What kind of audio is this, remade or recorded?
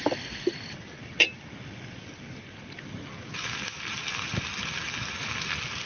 recorded